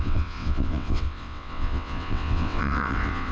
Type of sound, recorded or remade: remade